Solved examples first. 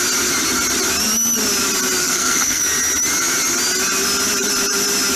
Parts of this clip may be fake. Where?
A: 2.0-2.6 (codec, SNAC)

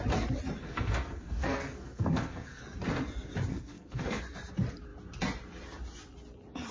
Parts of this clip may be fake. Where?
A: 0.6-2.6 (codec, SNAC); 3.5-4.2

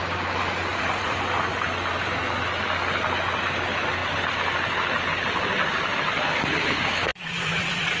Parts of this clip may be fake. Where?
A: 0.7-1.2 (vocoder, Vocos); 7.1-8.0

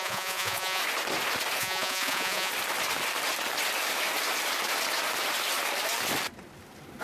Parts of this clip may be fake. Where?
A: 0.0-0.8 (vocoder, Vocos); 1.6-2.5

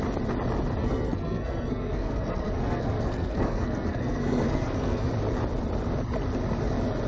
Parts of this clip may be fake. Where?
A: 0.8-5.1 (codec, SNAC)

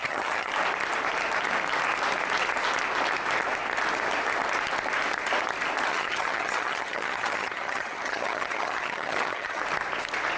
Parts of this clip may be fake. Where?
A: 0.0-0.5 (vocoder, HiFi-GAN); 5.9-9.6

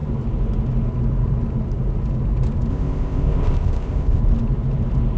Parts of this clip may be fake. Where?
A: 2.7-4.2 (codec, ZipCodec)